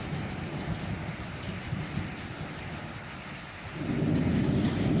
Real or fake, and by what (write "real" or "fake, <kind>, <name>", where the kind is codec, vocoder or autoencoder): real